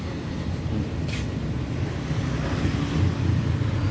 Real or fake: real